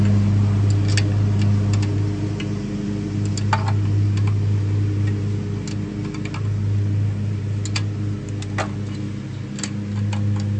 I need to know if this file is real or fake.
real